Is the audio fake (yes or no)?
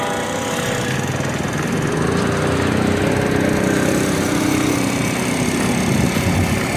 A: no